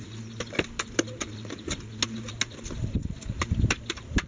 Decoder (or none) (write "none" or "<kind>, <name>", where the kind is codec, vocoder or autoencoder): none